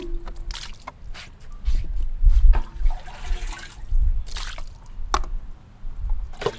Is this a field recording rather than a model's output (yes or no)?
yes